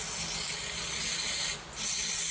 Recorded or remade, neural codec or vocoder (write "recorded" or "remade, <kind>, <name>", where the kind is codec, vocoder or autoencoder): recorded